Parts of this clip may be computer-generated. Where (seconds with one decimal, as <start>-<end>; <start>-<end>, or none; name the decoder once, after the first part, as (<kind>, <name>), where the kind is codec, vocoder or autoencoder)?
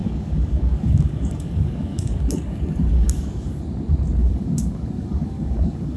0.0-3.6 (codec, DAC); 4.2-6.0